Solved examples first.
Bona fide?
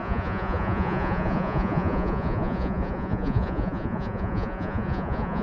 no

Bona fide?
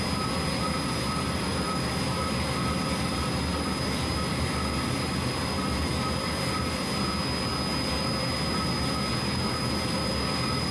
yes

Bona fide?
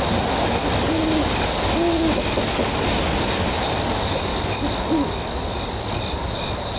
yes